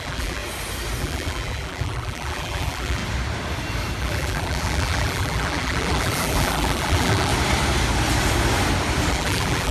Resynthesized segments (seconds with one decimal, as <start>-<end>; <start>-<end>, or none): 0.0-0.4; 1.0-3.0; 4.0-7.3; 9.1-9.7